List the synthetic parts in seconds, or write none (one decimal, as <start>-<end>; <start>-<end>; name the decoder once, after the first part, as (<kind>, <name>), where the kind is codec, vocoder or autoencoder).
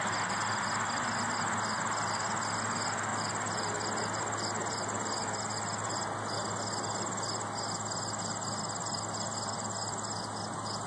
none